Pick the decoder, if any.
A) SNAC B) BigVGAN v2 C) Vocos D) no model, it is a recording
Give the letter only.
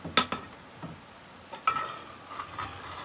D